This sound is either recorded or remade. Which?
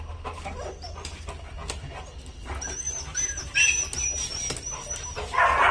recorded